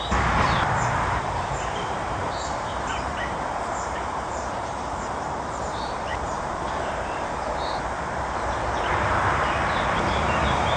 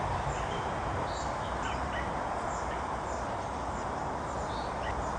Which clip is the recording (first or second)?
second